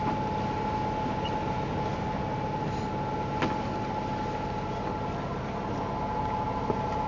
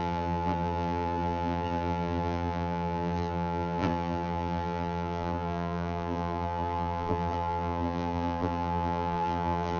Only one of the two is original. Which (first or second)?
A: first